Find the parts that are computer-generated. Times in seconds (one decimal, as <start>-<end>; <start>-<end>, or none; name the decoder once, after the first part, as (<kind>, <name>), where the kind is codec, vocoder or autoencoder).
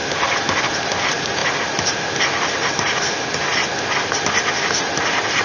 none